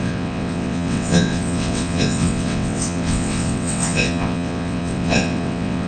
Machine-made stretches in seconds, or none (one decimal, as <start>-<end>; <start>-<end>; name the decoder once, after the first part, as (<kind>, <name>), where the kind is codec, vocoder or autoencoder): 0.0-5.9 (vocoder, WaveNeXt)